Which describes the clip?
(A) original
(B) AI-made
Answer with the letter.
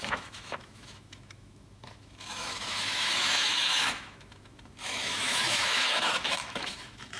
B